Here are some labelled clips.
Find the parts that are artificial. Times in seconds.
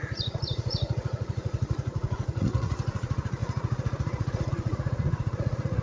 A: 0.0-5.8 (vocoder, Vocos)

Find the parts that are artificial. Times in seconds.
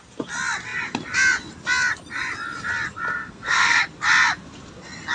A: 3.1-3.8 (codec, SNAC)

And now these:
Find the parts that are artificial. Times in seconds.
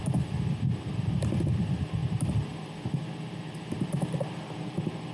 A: none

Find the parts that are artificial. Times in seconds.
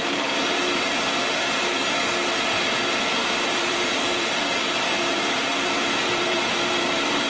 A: 0.0-1.8 (vocoder, BigVGAN v2); 3.5-7.3